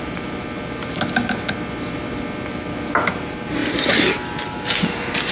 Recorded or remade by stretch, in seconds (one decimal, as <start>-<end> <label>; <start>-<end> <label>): 0.0-0.8 remade; 0.8-2.5 recorded; 2.5-5.3 remade